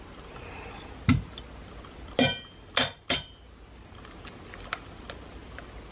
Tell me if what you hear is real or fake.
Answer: real